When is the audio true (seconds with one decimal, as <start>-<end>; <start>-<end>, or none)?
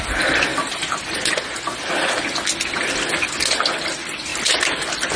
0.0-5.2